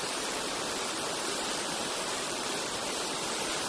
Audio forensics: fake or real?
fake